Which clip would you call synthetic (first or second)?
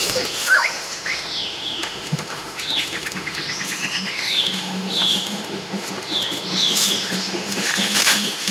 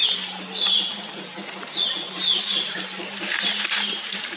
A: first